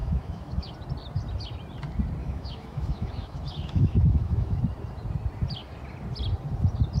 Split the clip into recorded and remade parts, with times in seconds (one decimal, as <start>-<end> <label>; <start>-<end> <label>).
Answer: 0.0-0.7 remade; 0.7-2.2 recorded; 2.2-4.6 remade; 4.6-7.0 recorded